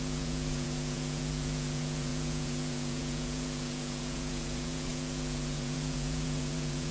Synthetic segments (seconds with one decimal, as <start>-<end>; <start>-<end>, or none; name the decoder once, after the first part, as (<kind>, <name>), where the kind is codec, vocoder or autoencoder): 0.0-6.9 (vocoder, Vocos)